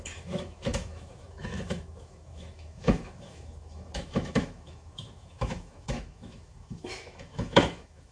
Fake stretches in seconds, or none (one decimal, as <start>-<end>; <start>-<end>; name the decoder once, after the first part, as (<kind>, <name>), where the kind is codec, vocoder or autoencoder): 0.0-8.1 (autoencoder, DAC-VAE)

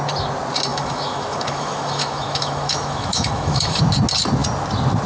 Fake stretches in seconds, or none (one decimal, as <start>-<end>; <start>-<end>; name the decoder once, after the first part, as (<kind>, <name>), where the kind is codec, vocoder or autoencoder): 0.7-3.8 (autoencoder, DAC-VAE)

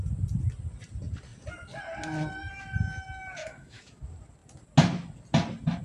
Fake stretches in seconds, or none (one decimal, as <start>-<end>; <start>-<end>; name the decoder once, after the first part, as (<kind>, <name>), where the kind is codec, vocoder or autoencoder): 3.4-4.0 (autoencoder, DAC-VAE)

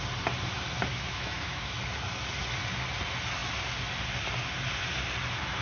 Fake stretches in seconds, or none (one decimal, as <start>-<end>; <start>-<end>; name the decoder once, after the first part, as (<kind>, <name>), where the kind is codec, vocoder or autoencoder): 0.9-1.8 (autoencoder, DAC-VAE)

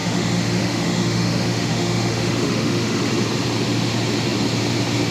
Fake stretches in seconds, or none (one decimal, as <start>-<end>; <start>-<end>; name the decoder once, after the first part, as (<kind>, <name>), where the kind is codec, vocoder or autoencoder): 0.0-3.1 (autoencoder, DAC-VAE)